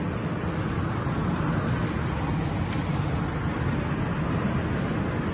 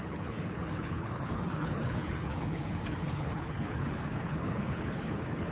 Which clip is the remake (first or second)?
second